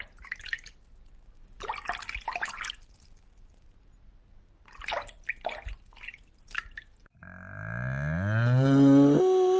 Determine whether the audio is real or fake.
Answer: real